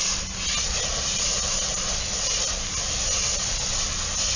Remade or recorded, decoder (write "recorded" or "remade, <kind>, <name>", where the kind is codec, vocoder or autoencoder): recorded